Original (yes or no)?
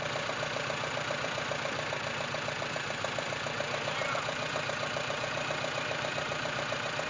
no